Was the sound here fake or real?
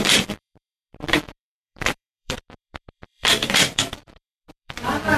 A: fake